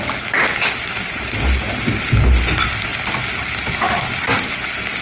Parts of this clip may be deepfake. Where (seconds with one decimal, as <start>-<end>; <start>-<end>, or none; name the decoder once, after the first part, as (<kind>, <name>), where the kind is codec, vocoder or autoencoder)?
none